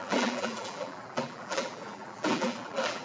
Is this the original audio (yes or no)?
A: no